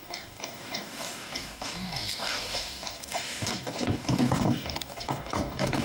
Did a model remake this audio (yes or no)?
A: yes